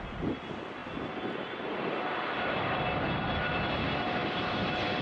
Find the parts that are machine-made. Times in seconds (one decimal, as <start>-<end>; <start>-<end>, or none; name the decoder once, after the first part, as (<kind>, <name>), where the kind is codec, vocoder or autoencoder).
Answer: none